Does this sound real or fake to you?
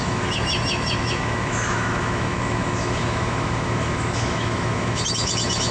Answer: fake